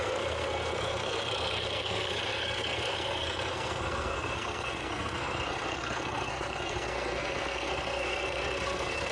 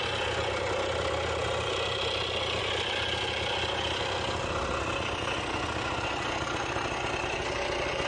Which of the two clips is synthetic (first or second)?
first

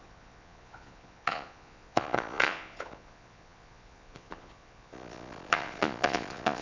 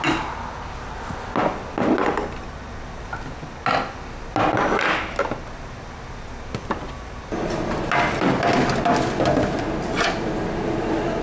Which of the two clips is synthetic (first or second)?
first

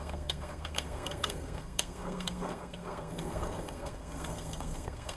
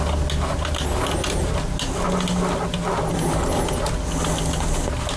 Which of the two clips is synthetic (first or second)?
first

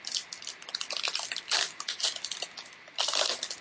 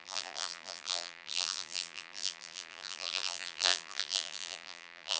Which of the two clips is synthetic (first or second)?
second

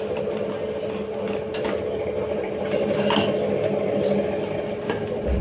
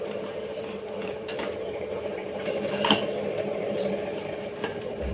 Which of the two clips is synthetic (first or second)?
second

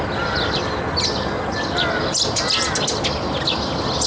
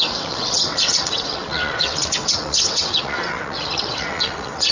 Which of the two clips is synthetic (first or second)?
second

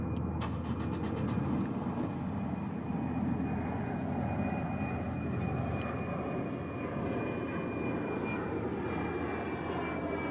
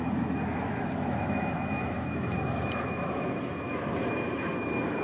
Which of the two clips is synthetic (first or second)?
second